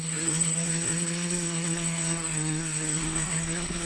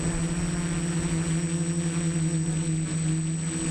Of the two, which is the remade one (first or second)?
first